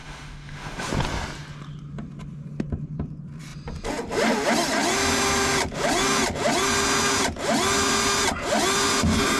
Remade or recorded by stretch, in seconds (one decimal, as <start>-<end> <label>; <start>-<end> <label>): 0.0-0.9 remade; 0.9-9.4 recorded